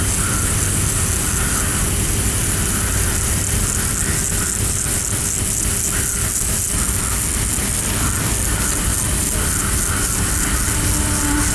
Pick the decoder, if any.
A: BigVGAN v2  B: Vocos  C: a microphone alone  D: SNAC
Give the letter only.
C